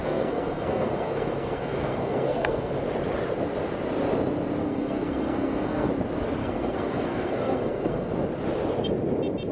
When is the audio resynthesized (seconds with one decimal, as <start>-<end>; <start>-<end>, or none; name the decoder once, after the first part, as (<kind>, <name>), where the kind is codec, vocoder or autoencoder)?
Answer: 0.0-2.7 (codec, SNAC); 4.6-5.9; 6.4-8.1